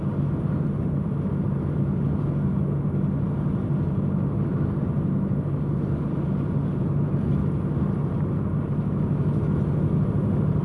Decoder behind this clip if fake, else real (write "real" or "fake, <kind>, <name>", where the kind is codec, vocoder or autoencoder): real